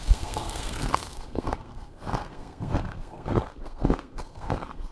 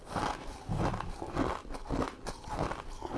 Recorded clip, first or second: second